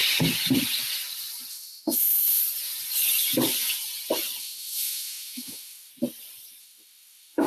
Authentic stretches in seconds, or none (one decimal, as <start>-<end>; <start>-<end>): 0.0-1.5; 2.4-4.4; 5.9-6.6

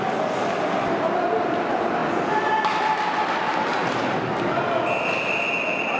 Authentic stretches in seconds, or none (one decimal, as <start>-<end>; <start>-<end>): 0.0-6.0